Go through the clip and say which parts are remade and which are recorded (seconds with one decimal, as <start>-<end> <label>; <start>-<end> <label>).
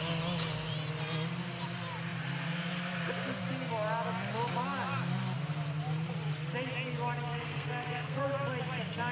0.0-7.3 recorded; 7.3-8.2 remade; 8.2-9.1 recorded